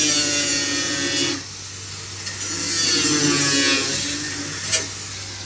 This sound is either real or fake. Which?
real